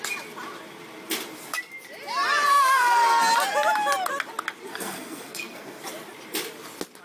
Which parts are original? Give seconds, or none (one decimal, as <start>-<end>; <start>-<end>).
0.0-2.5; 3.2-4.7; 5.8-7.0